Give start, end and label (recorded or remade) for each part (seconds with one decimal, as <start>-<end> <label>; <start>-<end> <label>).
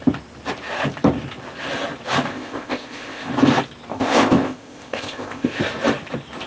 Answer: 0.0-2.3 recorded; 2.3-3.3 remade; 3.3-3.9 recorded; 3.9-5.6 remade; 5.6-6.5 recorded